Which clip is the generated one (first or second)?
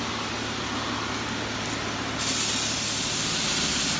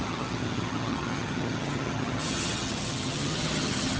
second